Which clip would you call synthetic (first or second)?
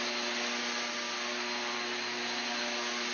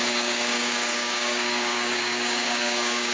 second